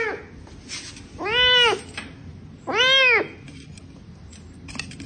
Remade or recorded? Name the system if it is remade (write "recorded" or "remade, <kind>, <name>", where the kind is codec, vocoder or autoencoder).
recorded